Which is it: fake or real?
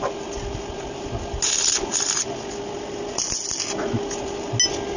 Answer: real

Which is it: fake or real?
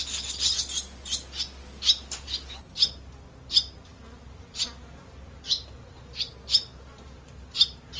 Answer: real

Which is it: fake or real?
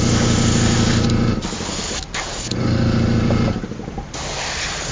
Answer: real